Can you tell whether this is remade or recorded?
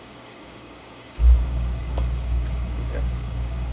remade